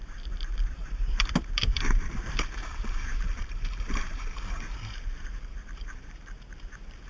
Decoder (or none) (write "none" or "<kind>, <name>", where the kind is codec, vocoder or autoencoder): vocoder, BigVGAN v2